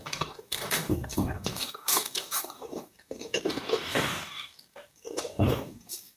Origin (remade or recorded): remade